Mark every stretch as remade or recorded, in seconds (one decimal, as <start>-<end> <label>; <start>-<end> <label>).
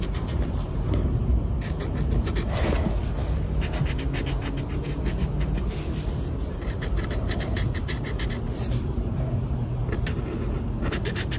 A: 0.0-1.5 remade; 1.5-6.3 recorded; 6.3-9.8 remade; 9.8-10.8 recorded; 10.8-11.4 remade